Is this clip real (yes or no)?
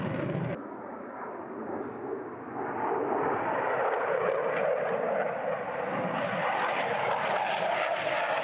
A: yes